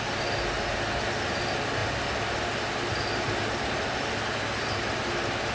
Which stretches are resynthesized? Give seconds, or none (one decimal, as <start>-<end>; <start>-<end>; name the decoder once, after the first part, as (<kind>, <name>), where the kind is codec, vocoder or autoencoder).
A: none